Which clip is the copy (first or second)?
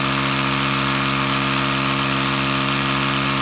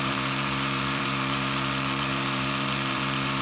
second